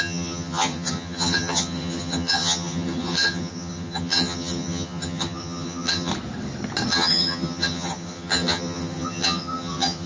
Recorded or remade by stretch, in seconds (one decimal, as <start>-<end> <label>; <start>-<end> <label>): 0.0-6.1 remade; 6.1-6.9 recorded; 6.9-10.1 remade